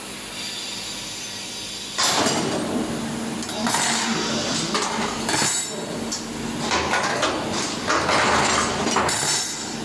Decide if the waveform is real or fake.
real